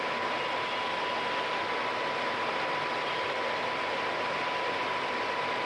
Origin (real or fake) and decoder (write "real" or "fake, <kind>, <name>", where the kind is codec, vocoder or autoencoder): real